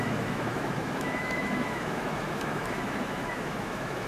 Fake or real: fake